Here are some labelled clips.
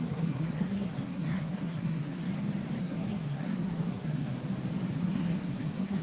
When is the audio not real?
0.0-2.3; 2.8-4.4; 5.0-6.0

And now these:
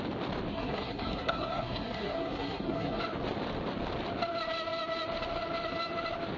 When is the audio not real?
0.5-3.0

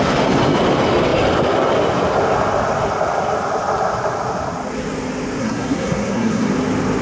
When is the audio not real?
5.4-6.5

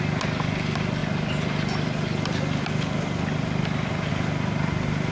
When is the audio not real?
none

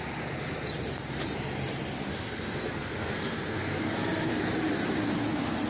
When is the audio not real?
2.1-4.4

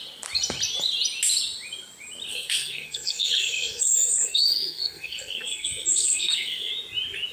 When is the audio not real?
2.3-6.7

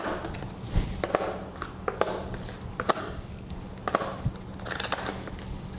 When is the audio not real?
2.9-3.5

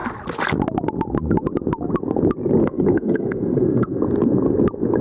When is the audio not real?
2.6-4.0